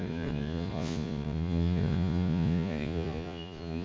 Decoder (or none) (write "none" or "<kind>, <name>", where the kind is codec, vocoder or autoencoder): vocoder, Vocos